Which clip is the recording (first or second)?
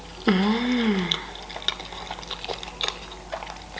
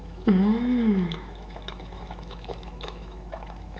first